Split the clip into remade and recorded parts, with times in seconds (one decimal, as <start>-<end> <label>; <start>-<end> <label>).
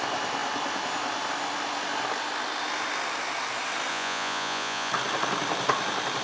0.0-3.9 recorded; 3.9-4.9 remade; 4.9-6.2 recorded